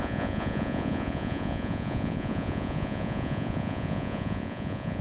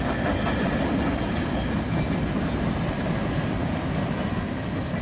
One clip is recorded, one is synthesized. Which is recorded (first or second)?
second